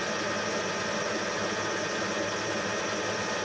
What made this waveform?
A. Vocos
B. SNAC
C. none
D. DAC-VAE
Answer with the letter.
C